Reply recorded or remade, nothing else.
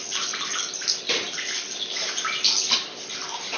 recorded